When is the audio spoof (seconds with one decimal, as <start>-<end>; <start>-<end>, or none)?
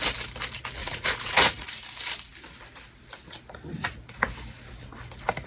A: 0.8-1.7